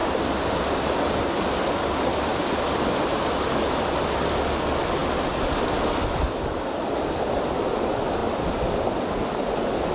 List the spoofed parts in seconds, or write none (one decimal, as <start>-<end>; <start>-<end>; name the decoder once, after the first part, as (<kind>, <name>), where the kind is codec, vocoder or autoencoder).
none